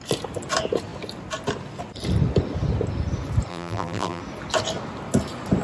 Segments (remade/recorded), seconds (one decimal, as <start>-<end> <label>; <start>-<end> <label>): 0.0-3.5 recorded; 3.5-4.2 remade; 4.2-5.6 recorded